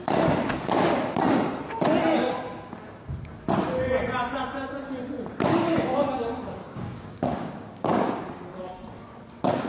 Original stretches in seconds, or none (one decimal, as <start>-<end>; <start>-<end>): 0.0-5.5; 6.1-6.6; 8.2-9.7

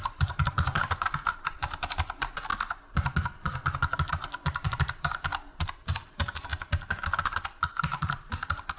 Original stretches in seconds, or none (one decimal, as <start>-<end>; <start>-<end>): 2.5-4.1; 6.5-7.8

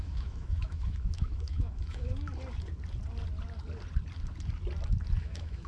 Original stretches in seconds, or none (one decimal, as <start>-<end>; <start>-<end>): 2.1-5.2

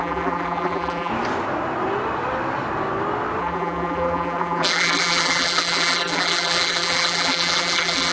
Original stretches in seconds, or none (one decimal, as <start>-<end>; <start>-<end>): 1.1-3.4

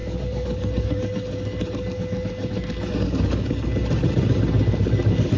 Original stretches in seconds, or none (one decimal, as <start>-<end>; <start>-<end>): 3.8-4.5

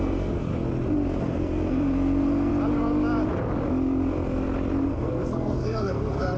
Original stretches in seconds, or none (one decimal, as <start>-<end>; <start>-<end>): 0.5-1.2; 2.5-4.9

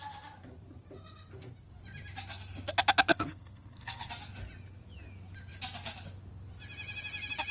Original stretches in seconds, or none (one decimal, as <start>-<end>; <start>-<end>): 0.0-3.1; 4.1-7.5